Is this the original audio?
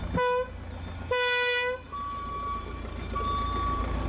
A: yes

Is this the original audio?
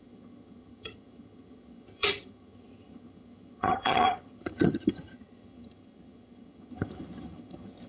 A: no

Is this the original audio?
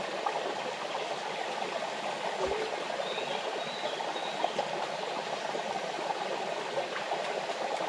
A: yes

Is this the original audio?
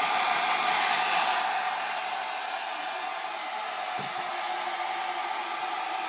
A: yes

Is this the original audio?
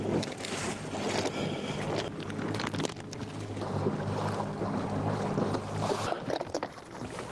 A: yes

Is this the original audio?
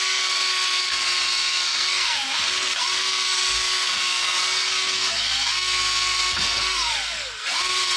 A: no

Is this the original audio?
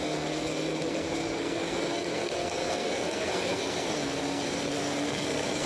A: no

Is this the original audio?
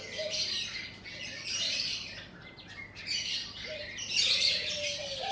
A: no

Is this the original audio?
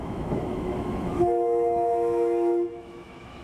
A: no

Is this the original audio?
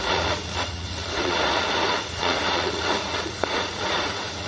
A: no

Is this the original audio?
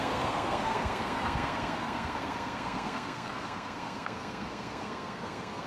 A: no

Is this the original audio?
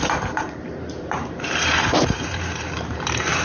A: no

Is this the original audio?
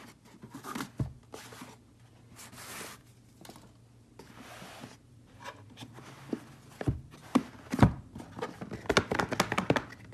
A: yes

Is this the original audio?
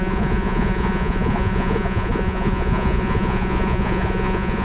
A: no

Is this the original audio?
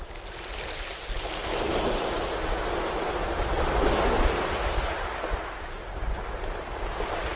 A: yes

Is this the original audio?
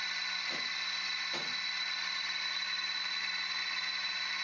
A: yes